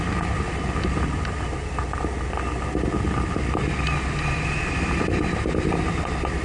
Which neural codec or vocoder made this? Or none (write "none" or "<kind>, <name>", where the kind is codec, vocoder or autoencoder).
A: vocoder, BigVGAN v2